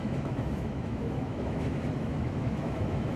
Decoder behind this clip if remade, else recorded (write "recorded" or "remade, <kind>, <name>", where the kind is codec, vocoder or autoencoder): remade, autoencoder, DAC-VAE